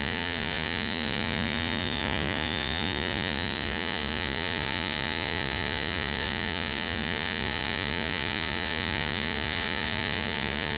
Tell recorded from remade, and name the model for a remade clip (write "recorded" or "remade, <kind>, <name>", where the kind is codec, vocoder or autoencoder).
remade, vocoder, Vocos